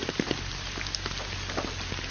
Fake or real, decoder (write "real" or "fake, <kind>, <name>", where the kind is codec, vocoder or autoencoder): real